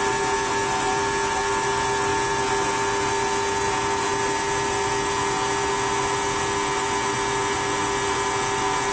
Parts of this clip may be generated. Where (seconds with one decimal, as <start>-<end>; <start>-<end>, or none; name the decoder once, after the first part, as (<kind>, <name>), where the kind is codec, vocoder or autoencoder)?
none